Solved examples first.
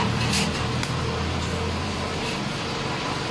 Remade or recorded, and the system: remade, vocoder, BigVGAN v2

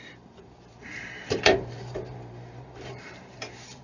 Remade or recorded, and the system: remade, vocoder, BigVGAN v2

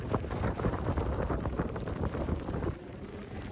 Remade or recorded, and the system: remade, vocoder, BigVGAN v2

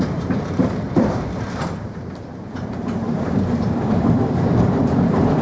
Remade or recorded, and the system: remade, vocoder, BigVGAN v2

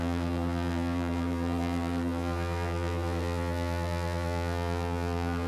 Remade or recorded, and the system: remade, vocoder, BigVGAN v2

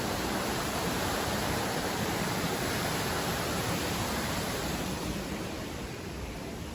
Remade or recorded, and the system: remade, vocoder, BigVGAN v2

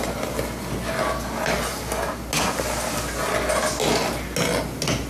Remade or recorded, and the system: recorded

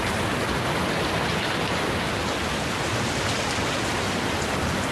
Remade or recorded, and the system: recorded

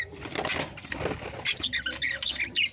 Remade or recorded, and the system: recorded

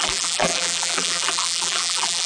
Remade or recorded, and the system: remade, vocoder, BigVGAN v2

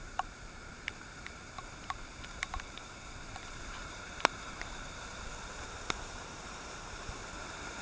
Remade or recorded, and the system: remade, vocoder, BigVGAN v2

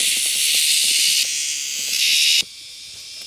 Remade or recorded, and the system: recorded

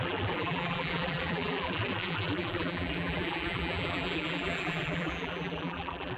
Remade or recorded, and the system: remade, vocoder, BigVGAN v2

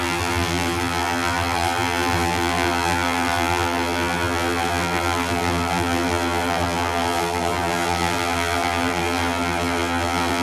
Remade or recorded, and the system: remade, vocoder, BigVGAN v2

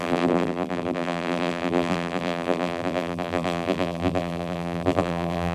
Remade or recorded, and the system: remade, vocoder, BigVGAN v2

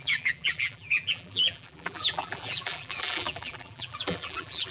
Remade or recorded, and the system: remade, vocoder, BigVGAN v2